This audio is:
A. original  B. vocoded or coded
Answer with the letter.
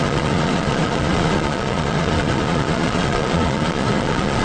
B